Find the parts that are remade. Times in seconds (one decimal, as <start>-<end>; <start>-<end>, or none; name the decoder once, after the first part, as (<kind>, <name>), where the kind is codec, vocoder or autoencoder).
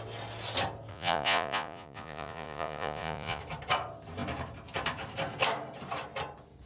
0.9-3.4 (vocoder, Vocos)